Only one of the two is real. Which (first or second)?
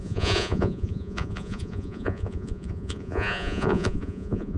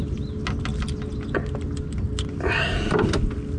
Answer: second